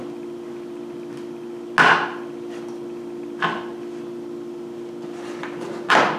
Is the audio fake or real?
real